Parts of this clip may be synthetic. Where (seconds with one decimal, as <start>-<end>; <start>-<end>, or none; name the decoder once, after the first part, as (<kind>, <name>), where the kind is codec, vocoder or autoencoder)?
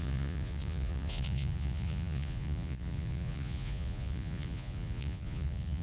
0.0-5.8 (vocoder, Vocos)